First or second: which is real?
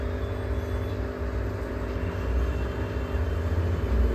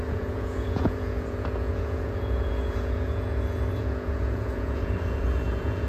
first